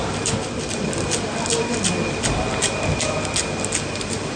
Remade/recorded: recorded